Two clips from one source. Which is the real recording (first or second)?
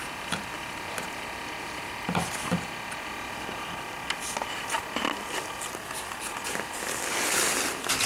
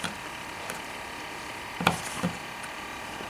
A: first